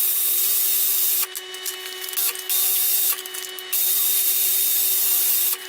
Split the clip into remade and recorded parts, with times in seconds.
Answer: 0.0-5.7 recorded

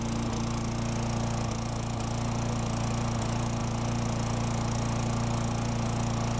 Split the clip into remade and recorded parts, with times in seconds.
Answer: 0.0-6.4 recorded

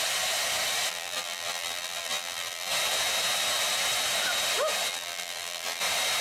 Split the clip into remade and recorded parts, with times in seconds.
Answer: 0.0-0.9 recorded; 0.9-2.7 remade; 2.7-4.9 recorded; 4.9-5.8 remade; 5.8-6.2 recorded

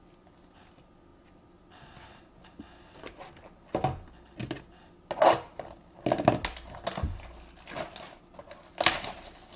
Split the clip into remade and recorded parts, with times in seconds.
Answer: 0.0-9.6 recorded